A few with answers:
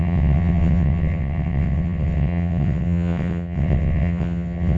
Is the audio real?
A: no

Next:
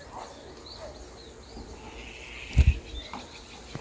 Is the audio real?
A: yes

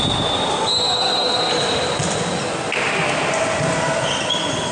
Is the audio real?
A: yes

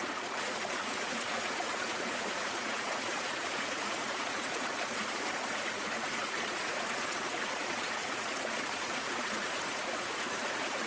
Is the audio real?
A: no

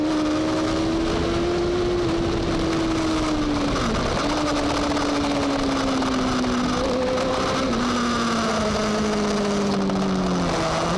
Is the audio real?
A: yes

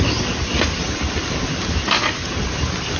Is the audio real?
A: yes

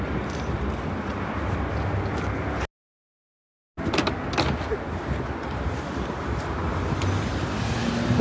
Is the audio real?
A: yes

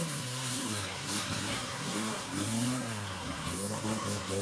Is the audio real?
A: no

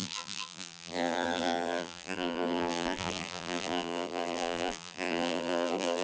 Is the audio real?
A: no